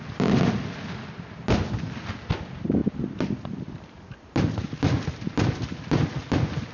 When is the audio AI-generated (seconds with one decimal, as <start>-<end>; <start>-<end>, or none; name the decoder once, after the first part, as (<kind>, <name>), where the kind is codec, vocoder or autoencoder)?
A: none